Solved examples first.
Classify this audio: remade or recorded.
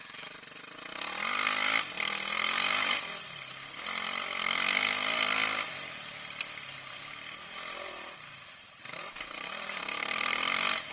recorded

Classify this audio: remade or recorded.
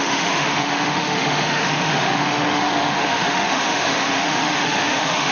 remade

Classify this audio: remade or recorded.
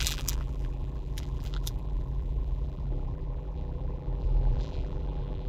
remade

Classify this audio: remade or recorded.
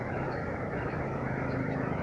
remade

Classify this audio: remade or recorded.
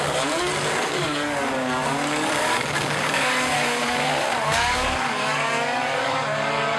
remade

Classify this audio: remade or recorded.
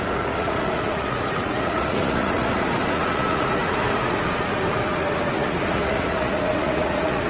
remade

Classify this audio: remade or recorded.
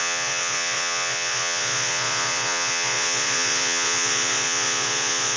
remade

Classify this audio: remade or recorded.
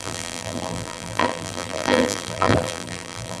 remade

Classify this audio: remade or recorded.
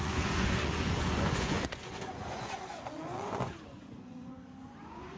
remade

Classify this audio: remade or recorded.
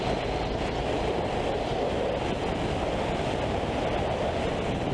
recorded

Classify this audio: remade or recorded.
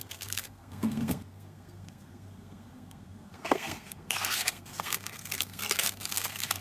remade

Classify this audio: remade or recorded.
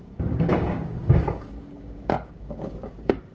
remade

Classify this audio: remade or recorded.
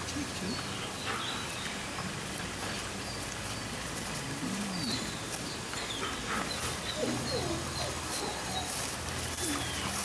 recorded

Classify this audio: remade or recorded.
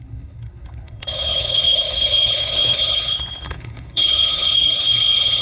remade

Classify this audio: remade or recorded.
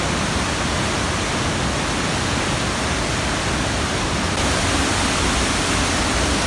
recorded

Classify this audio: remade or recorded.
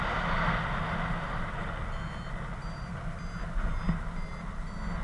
recorded